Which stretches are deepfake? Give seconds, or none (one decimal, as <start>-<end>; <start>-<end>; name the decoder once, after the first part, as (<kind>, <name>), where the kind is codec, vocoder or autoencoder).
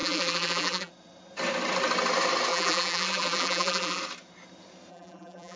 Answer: 0.0-0.9 (vocoder, BigVGAN v2); 2.5-4.0; 4.9-5.6